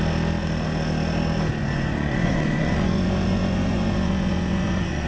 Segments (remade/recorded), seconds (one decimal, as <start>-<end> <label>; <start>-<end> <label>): 0.0-1.6 recorded; 1.6-5.1 remade